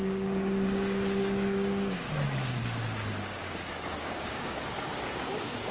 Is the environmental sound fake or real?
fake